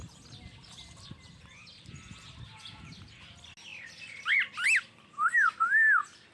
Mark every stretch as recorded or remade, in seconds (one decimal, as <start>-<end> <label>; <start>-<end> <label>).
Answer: 0.0-6.3 recorded